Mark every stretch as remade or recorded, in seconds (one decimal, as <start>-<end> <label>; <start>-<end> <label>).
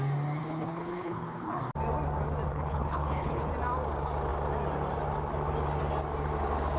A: 0.0-0.4 recorded; 0.4-1.6 remade; 1.6-2.5 recorded; 2.5-3.5 remade; 3.5-6.8 recorded